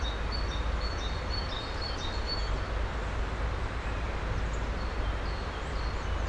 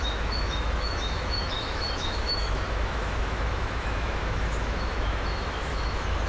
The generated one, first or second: second